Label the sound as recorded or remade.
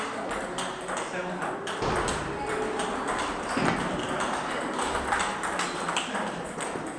recorded